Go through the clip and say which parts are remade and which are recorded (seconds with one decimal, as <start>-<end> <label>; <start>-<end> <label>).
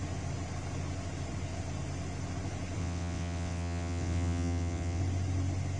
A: 0.0-2.8 recorded; 2.8-5.0 remade; 5.0-5.8 recorded